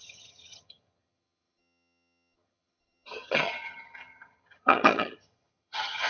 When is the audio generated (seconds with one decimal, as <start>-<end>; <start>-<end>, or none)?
0.0-6.1